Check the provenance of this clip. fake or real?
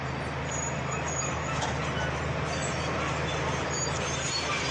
real